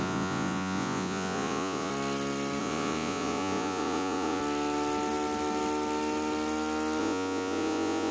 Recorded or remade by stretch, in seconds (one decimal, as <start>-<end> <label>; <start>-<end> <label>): 0.0-1.9 remade; 1.9-2.6 recorded; 2.6-4.4 remade; 4.4-7.0 recorded; 7.0-8.1 remade